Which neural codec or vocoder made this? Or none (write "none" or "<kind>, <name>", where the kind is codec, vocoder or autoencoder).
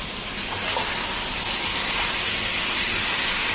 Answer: none